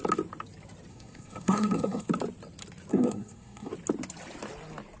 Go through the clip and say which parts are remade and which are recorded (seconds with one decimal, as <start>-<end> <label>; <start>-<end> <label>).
0.0-0.9 recorded; 0.9-2.1 remade; 2.1-2.9 recorded; 2.9-3.7 remade; 3.7-5.0 recorded